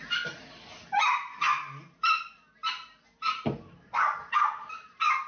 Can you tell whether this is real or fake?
real